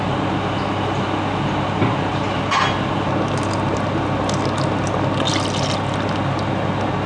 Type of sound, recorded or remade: recorded